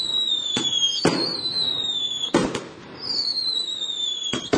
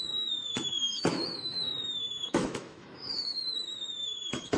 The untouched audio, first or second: first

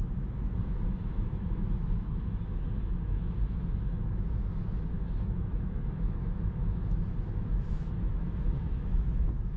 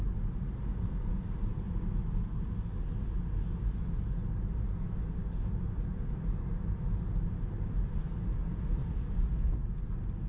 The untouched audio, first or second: second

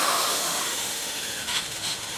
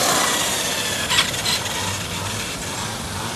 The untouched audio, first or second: second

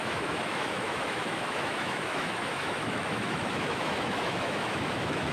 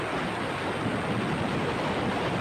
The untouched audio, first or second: second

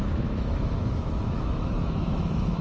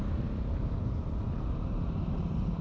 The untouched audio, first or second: second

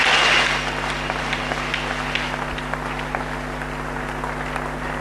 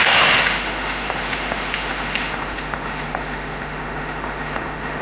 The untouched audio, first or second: first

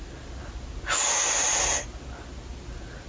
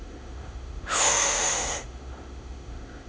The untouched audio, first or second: first